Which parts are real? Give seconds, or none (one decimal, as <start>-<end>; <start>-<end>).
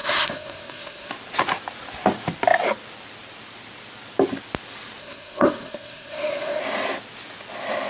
1.1-5.0; 6.6-7.9